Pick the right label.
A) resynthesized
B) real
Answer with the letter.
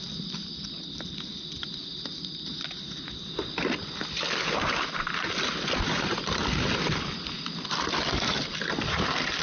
B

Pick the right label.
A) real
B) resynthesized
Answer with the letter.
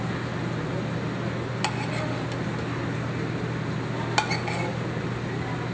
A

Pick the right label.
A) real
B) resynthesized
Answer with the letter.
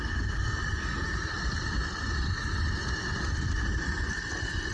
A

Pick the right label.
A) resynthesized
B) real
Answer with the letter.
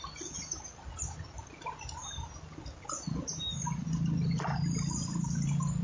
B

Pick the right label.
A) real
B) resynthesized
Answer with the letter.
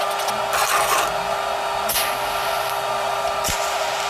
A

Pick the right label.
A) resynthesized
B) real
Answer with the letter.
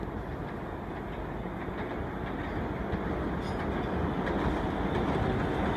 B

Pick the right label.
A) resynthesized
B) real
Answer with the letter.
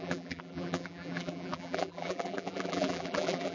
A